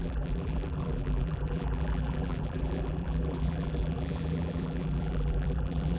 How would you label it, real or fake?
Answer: fake